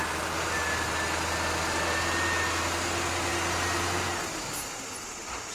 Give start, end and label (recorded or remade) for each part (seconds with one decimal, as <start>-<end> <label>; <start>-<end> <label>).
0.0-5.5 recorded